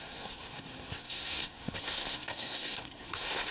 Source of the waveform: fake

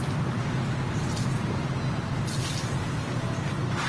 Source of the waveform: real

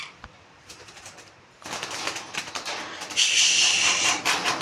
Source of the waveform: real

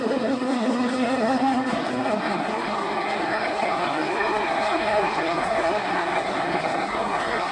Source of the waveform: fake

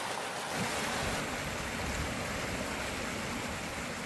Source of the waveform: real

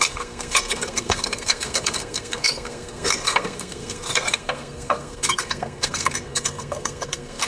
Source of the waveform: fake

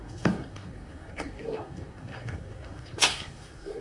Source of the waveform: fake